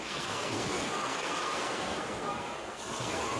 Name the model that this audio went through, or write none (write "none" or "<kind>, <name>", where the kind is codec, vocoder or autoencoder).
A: codec, SNAC